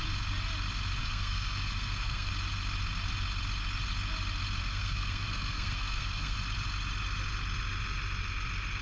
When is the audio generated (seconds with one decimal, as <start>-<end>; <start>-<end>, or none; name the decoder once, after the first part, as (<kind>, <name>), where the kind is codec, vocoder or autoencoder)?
1.0-2.3 (codec, SNAC); 4.7-6.4